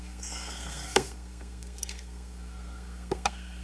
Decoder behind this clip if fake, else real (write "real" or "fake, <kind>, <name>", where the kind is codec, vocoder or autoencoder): fake, codec, SNAC